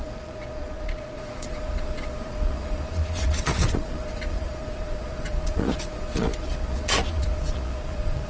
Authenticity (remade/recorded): remade